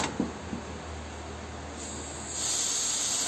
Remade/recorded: recorded